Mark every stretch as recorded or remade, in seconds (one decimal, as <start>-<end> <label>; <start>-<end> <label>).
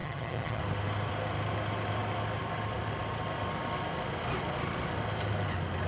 0.0-0.6 remade; 0.6-5.9 recorded